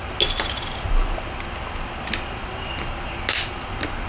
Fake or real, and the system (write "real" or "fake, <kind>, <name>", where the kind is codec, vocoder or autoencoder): real